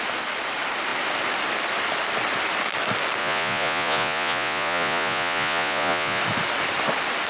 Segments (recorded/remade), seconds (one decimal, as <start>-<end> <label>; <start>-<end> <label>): 0.0-3.2 recorded; 3.2-6.2 remade; 6.2-7.3 recorded